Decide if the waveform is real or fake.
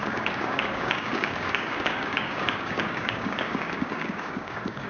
fake